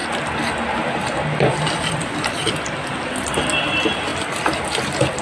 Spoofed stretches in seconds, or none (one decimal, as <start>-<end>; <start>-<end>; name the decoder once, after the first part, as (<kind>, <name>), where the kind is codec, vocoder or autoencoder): 0.0-3.1 (vocoder, BigVGAN v2); 4.1-5.2